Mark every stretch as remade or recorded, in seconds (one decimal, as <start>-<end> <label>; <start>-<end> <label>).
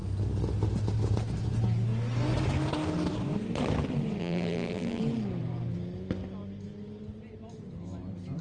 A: 0.0-4.2 recorded; 4.2-5.0 remade; 5.0-8.4 recorded